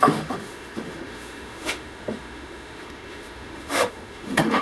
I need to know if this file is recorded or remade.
remade